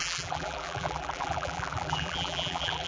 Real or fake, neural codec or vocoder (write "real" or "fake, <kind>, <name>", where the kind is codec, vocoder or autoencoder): fake, vocoder, BigVGAN v2